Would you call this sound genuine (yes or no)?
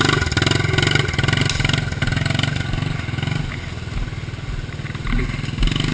yes